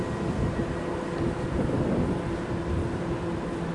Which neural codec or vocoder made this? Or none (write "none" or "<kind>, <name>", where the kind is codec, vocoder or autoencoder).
none